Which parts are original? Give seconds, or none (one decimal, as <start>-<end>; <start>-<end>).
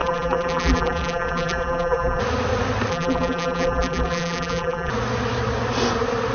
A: 2.2-2.9; 4.9-6.3